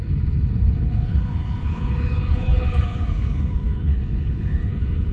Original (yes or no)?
no